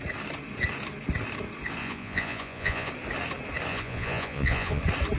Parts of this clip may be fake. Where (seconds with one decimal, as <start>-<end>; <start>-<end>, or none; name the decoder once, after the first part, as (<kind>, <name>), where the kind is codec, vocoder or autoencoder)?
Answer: 1.8-2.9 (vocoder, Vocos); 3.7-4.8